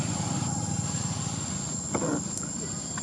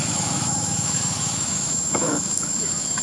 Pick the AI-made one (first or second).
second